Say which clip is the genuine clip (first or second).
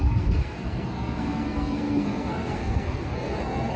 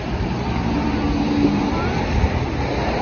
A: second